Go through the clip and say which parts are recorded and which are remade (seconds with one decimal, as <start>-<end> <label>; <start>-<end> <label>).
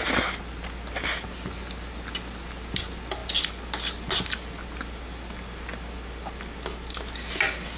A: 0.0-7.8 recorded